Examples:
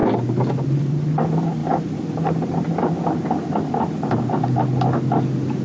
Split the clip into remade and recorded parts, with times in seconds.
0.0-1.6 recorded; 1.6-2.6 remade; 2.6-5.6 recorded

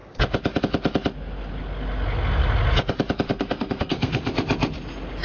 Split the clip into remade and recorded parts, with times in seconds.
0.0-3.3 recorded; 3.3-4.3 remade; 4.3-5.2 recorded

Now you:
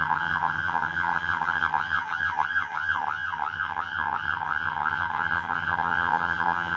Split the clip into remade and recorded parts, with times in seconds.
0.0-6.8 remade